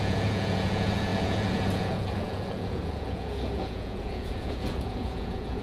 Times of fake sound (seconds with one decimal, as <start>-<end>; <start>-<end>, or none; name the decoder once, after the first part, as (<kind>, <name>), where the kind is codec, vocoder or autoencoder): 0.0-5.6 (vocoder, Vocos)